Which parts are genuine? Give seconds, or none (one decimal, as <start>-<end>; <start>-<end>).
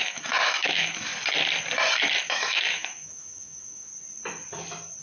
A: 1.1-2.2; 3.9-5.0